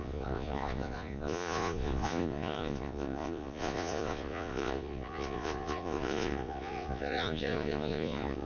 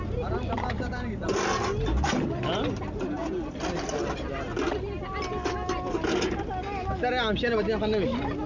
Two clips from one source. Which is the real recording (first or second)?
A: second